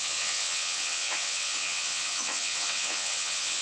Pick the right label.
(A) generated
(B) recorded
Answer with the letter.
A